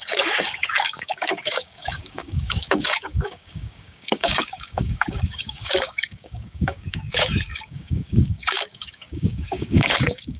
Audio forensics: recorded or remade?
remade